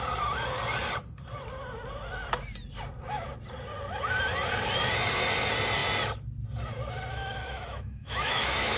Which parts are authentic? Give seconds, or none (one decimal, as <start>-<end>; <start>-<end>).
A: 0.0-7.1